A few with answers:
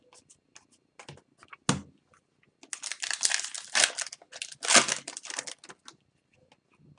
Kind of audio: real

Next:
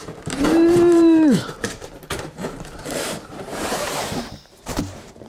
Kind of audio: fake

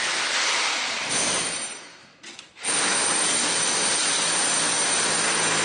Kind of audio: real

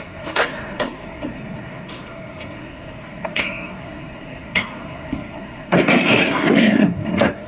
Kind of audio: fake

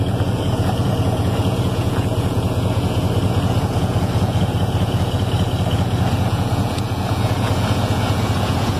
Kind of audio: fake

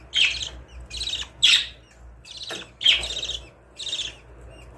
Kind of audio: real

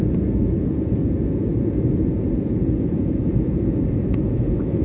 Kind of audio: fake